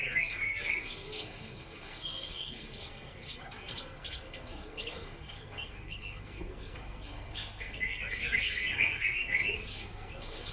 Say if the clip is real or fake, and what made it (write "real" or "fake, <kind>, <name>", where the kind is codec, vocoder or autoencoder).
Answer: fake, codec, SNAC